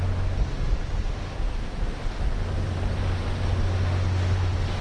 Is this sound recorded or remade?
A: recorded